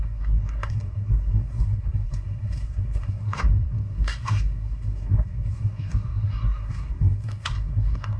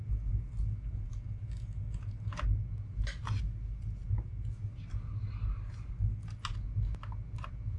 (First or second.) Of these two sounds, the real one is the second